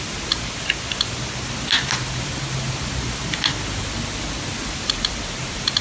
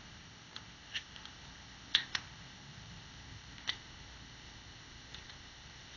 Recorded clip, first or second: first